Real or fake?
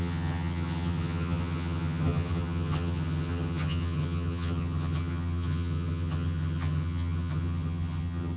fake